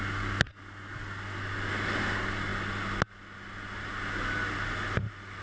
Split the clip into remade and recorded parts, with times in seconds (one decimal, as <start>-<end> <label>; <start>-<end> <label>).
0.0-5.4 recorded